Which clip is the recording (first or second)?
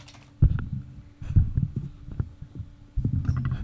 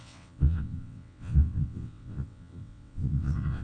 first